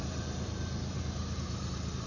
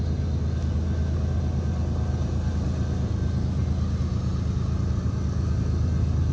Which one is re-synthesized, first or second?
first